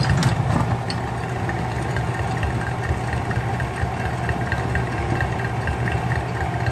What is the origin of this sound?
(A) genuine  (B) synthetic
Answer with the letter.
A